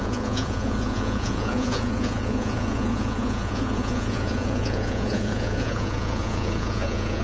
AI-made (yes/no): yes